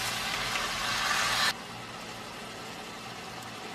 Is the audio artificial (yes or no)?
no